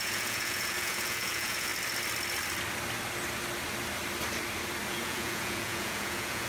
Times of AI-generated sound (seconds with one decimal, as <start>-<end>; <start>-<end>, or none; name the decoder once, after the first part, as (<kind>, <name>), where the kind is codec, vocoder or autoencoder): 0.0-1.7 (vocoder, Vocos); 4.9-6.5